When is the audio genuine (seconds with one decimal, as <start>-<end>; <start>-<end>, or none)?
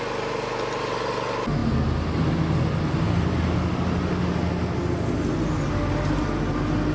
0.0-6.9